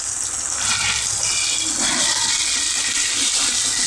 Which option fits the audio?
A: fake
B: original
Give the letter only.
B